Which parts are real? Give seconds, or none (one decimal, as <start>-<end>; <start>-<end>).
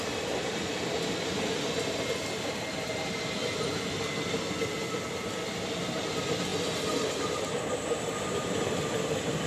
0.0-9.5